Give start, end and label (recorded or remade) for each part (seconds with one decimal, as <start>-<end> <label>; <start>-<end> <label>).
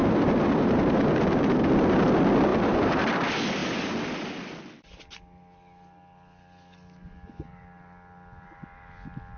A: 0.0-1.7 remade; 1.7-2.5 recorded; 2.5-3.1 remade; 3.1-9.4 recorded